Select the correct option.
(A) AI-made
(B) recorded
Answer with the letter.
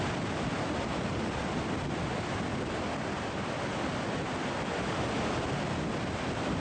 B